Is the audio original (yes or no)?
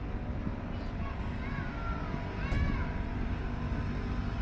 yes